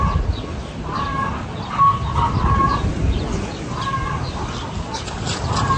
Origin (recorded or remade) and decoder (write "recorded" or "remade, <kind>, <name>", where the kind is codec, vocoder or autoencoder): recorded